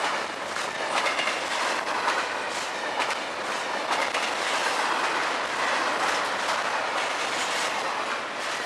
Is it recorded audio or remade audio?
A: recorded